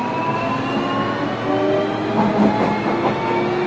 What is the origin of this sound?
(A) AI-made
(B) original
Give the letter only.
B